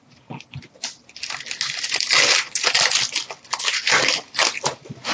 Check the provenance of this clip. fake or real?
real